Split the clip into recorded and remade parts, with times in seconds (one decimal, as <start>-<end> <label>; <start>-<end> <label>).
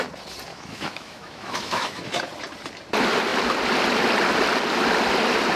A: 0.0-0.5 recorded; 0.5-2.2 remade; 2.2-5.6 recorded